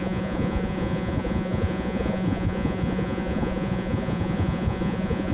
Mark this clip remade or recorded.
remade